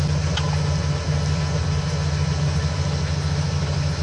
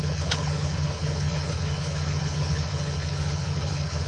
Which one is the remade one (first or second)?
second